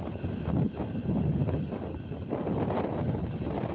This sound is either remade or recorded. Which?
recorded